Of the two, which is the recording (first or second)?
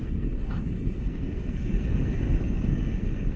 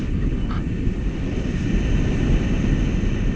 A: second